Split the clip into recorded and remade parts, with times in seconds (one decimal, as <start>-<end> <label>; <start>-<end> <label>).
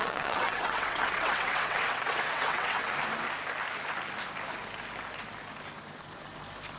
0.0-2.9 remade; 2.9-6.8 recorded